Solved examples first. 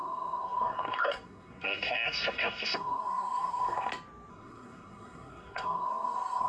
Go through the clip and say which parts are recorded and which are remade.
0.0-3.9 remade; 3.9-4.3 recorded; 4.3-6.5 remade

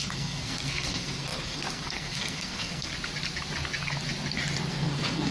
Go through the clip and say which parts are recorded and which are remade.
0.0-2.9 remade; 2.9-4.7 recorded; 4.7-5.3 remade

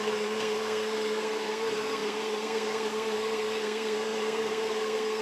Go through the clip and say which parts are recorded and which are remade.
0.0-5.2 remade

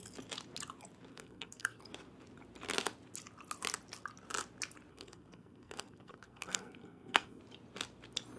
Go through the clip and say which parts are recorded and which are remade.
0.0-1.1 recorded; 1.1-1.8 remade; 1.8-4.9 recorded; 4.9-7.4 remade; 7.4-8.4 recorded

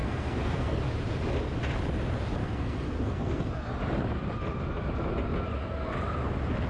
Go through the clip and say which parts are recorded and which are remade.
0.0-0.8 remade; 0.8-2.4 recorded; 2.4-3.5 remade; 3.5-6.7 recorded

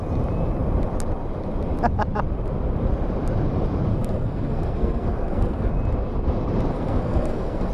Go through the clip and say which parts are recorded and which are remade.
0.0-3.9 recorded; 3.9-5.7 remade; 5.7-6.7 recorded; 6.7-7.7 remade

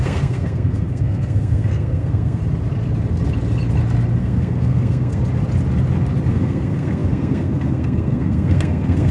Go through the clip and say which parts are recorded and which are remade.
0.0-2.4 remade; 2.4-4.2 recorded; 4.2-5.2 remade; 5.2-6.3 recorded; 6.3-9.1 remade